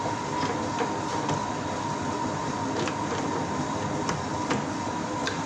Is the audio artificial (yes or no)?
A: no